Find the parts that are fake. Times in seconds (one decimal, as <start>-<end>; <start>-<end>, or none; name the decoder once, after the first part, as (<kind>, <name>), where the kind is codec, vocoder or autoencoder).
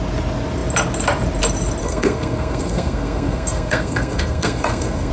1.8-5.1 (codec, SNAC)